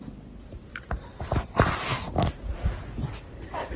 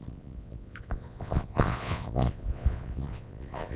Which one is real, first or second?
first